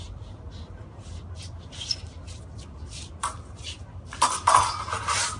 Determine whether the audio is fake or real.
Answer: real